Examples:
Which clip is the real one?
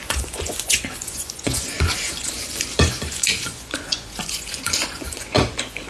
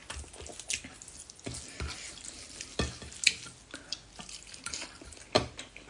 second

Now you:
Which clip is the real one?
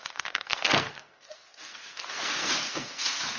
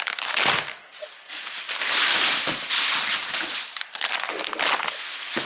second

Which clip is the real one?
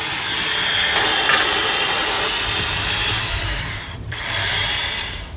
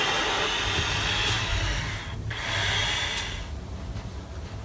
second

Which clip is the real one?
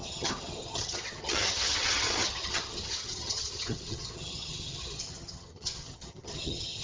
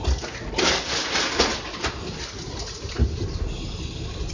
second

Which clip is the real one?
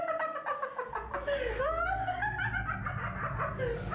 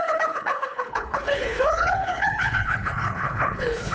first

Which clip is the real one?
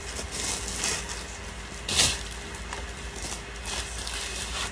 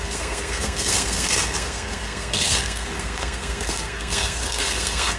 first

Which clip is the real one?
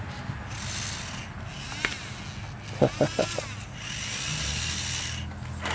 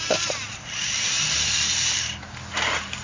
first